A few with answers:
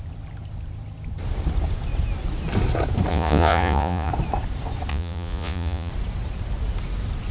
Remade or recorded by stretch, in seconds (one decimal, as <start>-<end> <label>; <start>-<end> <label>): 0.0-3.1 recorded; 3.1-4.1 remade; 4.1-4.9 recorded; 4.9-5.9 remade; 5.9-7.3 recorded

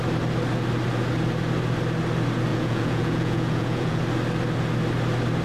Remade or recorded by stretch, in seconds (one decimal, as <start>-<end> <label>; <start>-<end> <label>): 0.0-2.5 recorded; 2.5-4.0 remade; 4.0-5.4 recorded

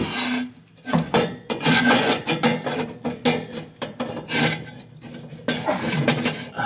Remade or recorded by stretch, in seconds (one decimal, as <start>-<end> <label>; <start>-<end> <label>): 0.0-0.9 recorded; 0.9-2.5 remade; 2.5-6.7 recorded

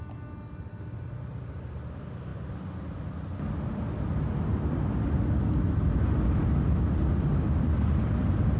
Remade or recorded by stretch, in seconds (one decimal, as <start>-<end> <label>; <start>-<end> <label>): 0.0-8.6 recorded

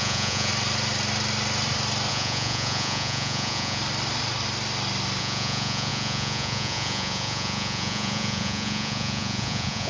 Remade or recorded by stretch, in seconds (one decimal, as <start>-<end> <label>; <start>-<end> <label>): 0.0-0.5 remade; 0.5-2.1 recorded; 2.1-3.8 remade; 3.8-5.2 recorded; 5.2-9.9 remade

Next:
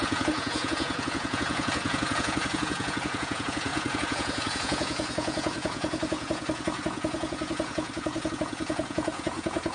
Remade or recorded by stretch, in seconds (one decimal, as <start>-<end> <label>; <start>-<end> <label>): 0.0-9.7 remade

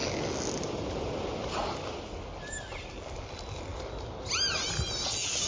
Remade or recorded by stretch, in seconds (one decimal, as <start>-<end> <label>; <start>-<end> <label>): 0.0-5.5 recorded

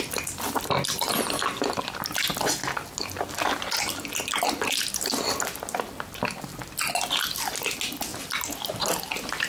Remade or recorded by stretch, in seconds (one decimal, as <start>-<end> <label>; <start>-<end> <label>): 0.0-9.5 recorded